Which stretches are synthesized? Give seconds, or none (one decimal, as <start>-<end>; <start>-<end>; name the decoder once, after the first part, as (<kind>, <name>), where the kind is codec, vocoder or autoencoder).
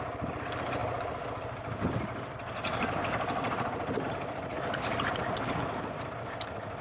none